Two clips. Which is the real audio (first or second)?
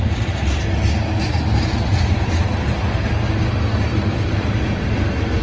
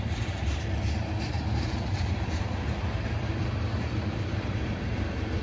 first